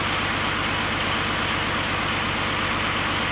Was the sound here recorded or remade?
recorded